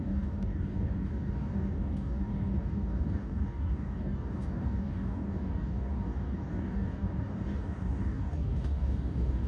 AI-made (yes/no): yes